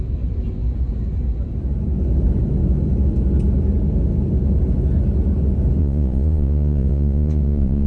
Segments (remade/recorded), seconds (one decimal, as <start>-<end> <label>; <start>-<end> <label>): 0.0-5.8 recorded; 5.8-7.9 remade